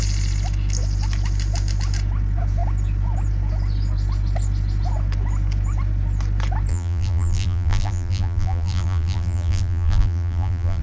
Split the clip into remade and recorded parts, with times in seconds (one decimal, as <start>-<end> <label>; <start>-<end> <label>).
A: 0.0-6.7 recorded; 6.7-10.8 remade